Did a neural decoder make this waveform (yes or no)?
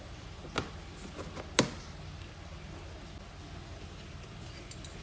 no